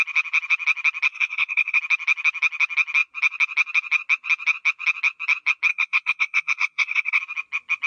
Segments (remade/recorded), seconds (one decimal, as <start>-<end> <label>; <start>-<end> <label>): 0.0-1.1 recorded; 1.1-1.8 remade; 1.8-5.7 recorded; 5.7-7.2 remade; 7.2-7.9 recorded